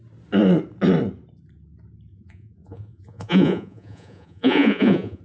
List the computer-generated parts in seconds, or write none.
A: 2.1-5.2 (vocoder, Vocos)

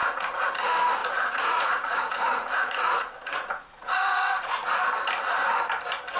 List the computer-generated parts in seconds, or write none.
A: 0.0-0.5 (vocoder, Vocos); 1.0-4.7

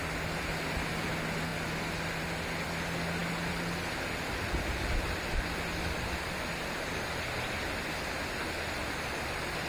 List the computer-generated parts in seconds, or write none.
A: none

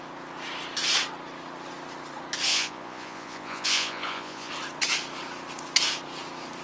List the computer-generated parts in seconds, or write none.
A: 2.5-4.5 (vocoder, Vocos)

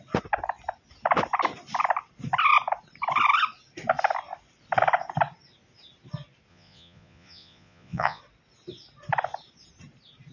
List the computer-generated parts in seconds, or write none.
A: 6.5-8.2 (vocoder, Vocos)